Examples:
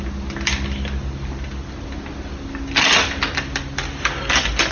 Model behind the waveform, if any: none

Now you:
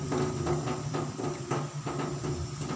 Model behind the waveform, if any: none